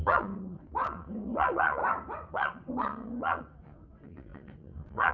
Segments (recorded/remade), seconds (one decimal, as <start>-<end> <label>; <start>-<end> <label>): 0.0-1.8 remade; 1.8-2.3 recorded; 2.3-5.1 remade